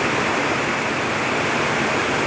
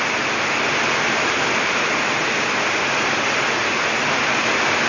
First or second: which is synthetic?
first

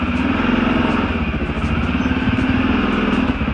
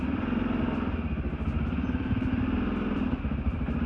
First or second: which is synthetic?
second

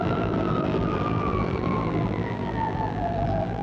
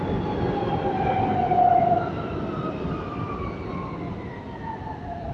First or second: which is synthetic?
first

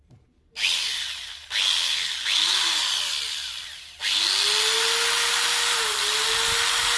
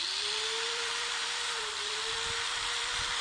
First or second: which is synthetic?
second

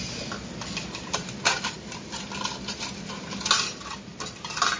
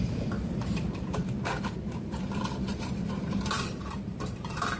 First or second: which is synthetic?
second